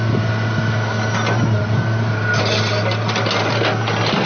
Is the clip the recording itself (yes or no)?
yes